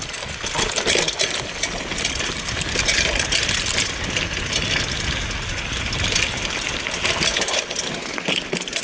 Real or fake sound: real